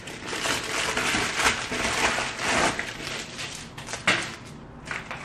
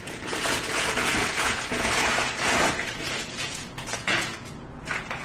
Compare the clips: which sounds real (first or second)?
first